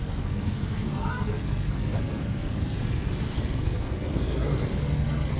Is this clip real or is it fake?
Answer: fake